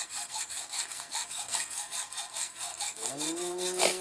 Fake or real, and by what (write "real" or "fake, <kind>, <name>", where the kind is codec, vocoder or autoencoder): fake, codec, SNAC